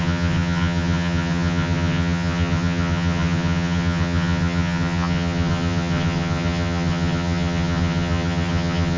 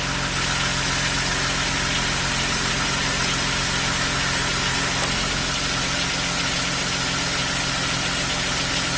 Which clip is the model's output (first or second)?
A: first